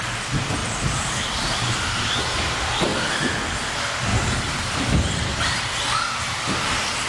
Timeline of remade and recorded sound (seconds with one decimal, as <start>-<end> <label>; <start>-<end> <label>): 0.0-0.6 recorded; 0.6-2.2 remade; 2.2-4.1 recorded; 4.1-5.4 remade; 5.4-7.1 recorded